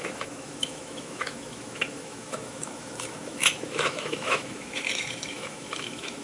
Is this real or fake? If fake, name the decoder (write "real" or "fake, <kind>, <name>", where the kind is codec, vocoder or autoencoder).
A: fake, autoencoder, DAC-VAE